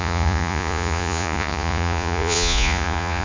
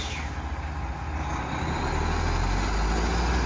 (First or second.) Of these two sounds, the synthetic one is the first